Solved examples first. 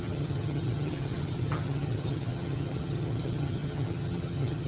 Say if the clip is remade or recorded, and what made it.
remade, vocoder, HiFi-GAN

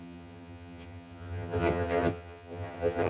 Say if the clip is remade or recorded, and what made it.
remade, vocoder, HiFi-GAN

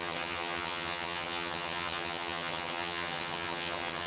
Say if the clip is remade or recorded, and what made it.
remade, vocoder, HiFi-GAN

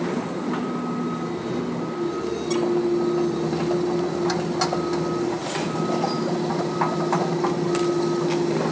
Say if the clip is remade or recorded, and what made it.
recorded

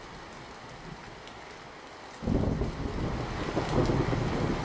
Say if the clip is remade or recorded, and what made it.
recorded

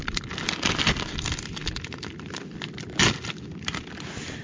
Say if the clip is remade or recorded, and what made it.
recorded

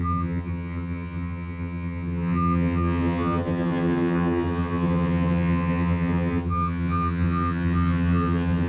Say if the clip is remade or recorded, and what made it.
remade, vocoder, HiFi-GAN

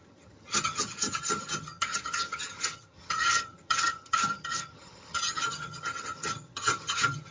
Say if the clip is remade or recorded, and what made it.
remade, vocoder, HiFi-GAN